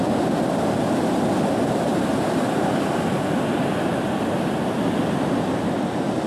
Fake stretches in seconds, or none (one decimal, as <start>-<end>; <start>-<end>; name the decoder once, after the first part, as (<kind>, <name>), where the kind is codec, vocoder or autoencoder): none